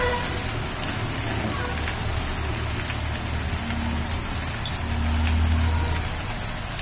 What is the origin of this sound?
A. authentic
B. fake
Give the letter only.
A